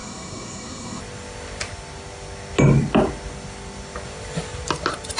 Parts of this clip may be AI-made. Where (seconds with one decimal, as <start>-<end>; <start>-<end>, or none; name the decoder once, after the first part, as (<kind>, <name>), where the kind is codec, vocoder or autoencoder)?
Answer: 0.0-1.0 (codec, SNAC)